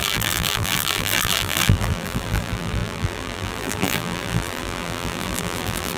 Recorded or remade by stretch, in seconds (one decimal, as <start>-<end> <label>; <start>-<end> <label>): 0.0-6.0 remade